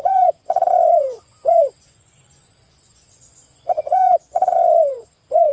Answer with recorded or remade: remade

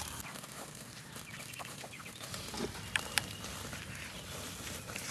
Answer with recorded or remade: recorded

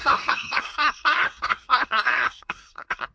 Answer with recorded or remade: remade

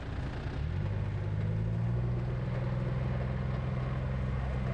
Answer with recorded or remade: recorded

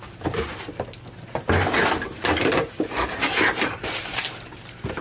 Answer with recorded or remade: remade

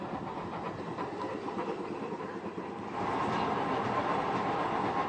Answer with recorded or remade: recorded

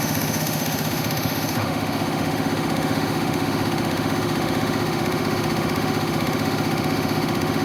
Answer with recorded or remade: remade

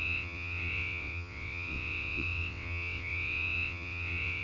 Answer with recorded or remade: remade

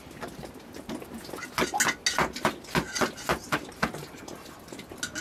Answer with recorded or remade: recorded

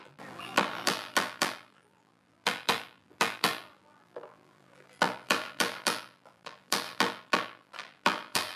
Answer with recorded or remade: remade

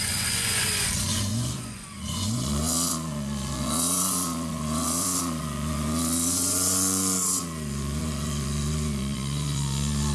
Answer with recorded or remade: remade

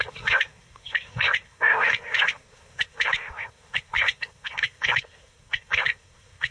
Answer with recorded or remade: remade